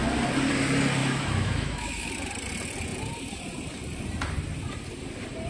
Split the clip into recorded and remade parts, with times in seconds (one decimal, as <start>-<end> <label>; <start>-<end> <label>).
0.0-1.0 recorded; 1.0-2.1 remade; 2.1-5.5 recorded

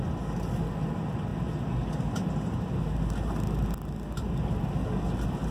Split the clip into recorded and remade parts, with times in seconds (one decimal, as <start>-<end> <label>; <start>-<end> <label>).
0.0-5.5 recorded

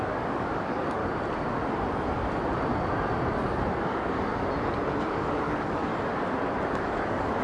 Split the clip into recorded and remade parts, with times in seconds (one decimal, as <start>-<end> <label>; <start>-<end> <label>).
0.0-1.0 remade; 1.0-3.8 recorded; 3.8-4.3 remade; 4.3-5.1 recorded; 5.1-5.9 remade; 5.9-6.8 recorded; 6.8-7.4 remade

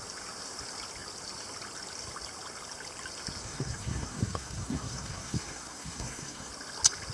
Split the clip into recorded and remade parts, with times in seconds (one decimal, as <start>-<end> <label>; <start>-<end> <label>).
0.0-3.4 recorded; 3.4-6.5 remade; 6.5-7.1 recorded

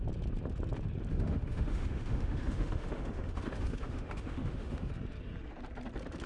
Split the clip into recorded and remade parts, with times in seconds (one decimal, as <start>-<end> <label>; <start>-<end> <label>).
0.0-1.1 recorded; 1.1-4.9 remade; 4.9-6.3 recorded